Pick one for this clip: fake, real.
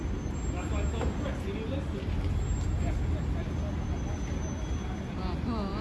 real